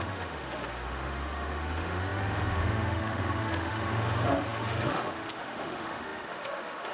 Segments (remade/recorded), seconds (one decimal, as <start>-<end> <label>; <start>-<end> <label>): 0.0-6.9 remade